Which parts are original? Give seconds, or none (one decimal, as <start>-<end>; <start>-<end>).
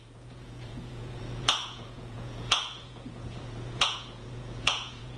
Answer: none